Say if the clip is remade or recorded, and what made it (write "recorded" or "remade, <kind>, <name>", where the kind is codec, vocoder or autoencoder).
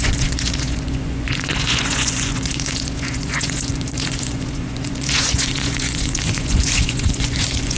remade, vocoder, Vocos